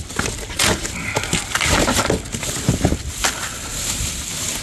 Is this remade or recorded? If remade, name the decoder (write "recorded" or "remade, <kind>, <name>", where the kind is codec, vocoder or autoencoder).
recorded